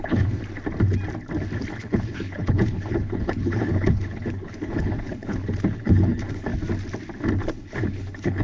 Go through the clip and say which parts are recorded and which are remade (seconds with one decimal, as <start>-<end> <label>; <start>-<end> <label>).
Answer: 0.0-0.4 remade; 0.4-1.7 recorded; 1.7-6.5 remade; 6.5-7.4 recorded; 7.4-8.4 remade